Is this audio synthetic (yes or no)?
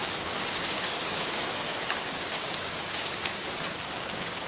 yes